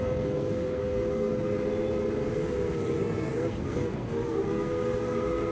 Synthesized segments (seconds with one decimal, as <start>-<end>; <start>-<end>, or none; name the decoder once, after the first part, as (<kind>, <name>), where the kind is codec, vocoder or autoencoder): 0.0-1.3 (codec, SNAC); 2.3-5.5